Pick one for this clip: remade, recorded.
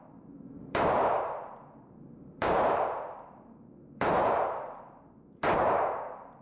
remade